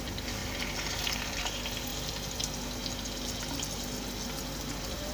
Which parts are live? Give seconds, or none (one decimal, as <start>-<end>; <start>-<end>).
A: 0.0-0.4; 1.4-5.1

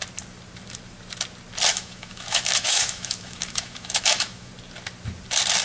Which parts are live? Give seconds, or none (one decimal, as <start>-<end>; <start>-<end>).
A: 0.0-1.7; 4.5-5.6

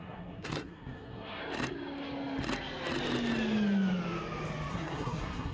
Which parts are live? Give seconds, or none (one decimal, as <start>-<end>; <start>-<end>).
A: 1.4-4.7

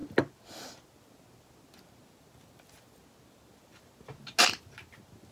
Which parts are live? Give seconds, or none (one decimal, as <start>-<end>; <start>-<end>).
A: 0.0-5.3